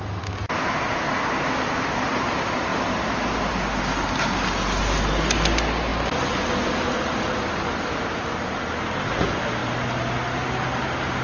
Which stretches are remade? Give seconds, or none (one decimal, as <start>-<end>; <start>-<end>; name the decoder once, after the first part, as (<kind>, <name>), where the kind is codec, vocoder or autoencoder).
none